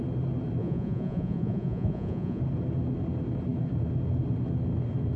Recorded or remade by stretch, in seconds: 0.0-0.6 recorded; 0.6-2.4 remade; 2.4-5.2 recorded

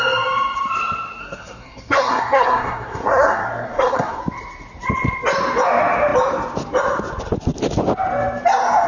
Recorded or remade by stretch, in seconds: 0.0-1.2 recorded; 1.2-4.2 remade; 4.2-8.9 recorded

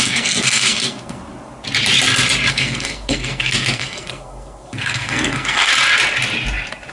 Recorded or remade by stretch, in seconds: 0.0-1.2 remade; 1.2-2.5 recorded; 2.5-5.7 remade; 5.7-6.9 recorded

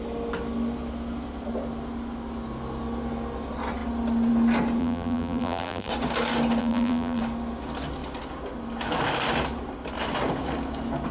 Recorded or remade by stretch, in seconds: 0.0-4.8 recorded; 4.8-5.9 remade; 5.9-6.6 recorded; 6.6-7.2 remade; 7.2-11.1 recorded